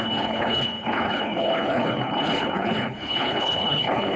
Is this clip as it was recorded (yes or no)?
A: no